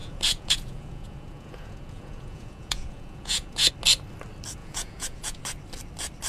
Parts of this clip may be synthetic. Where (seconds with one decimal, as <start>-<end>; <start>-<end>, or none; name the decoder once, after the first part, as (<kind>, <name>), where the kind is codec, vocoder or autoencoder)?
0.0-3.7 (vocoder, Vocos); 4.6-5.4